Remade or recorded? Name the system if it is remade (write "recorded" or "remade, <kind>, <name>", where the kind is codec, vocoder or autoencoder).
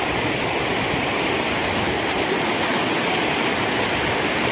recorded